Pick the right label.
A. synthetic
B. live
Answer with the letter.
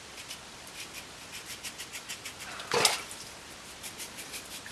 B